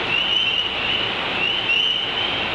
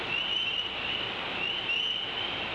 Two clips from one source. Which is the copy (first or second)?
second